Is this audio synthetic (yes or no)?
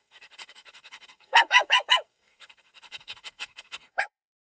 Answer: yes